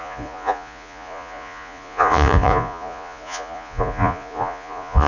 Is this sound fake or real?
fake